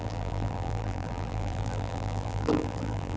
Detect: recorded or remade remade